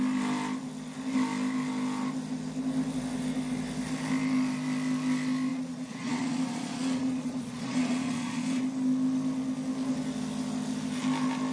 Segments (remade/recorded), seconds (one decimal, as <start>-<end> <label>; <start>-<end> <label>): 0.0-5.5 recorded; 5.5-8.6 remade; 8.6-11.5 recorded